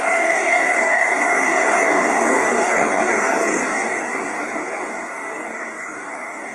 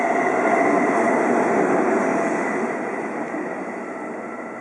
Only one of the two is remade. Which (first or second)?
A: first